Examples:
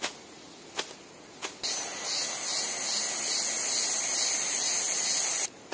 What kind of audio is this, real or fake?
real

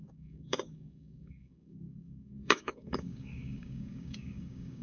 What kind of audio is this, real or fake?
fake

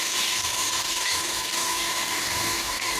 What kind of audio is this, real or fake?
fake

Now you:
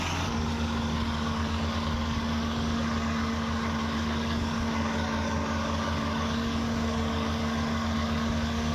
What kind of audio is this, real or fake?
fake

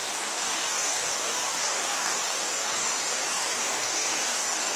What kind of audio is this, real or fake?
fake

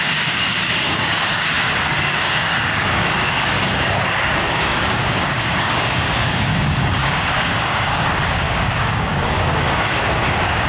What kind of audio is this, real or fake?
fake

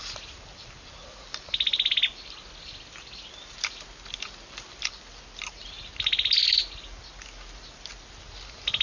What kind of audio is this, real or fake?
real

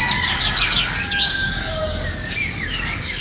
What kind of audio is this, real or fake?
fake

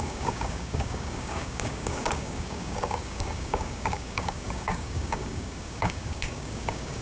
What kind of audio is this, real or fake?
fake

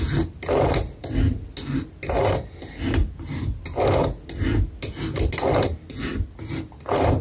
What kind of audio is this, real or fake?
real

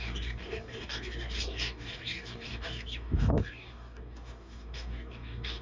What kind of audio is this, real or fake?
fake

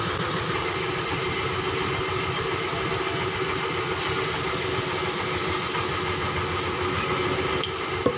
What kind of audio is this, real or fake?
real